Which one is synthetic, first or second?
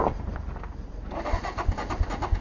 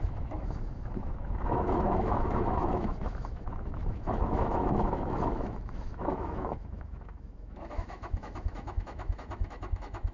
second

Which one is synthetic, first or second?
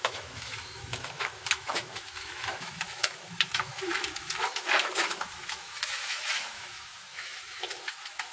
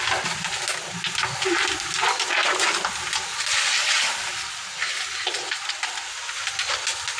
first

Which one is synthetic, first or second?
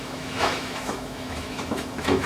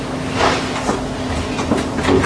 first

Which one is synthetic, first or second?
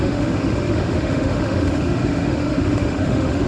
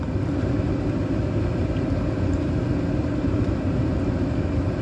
first